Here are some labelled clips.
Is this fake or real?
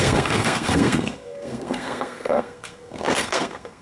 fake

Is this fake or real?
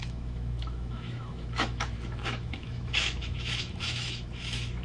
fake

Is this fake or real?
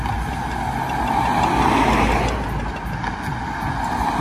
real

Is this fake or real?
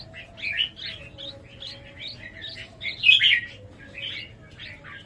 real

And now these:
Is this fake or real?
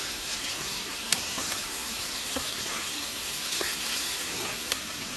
fake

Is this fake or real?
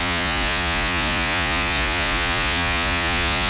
fake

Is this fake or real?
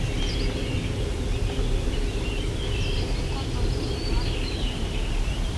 real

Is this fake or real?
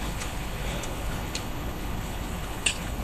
fake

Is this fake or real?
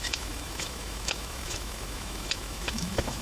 fake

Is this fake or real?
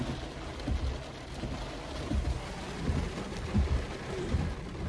real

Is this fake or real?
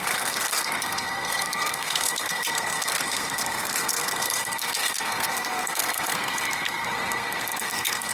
fake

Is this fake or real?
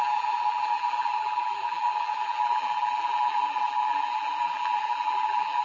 fake